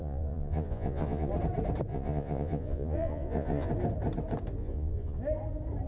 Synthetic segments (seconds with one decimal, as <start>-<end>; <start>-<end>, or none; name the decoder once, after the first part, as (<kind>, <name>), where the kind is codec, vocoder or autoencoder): 0.0-1.3 (vocoder, Vocos); 1.9-3.7; 4.6-5.2